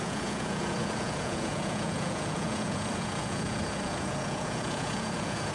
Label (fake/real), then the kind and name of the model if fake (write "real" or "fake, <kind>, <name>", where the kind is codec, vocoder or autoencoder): fake, vocoder, Vocos